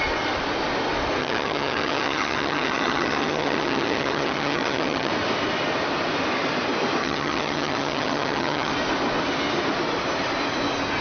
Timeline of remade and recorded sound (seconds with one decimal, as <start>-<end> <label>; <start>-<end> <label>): 0.0-1.2 recorded; 1.2-5.1 remade; 5.1-7.0 recorded; 7.0-8.7 remade; 8.7-11.0 recorded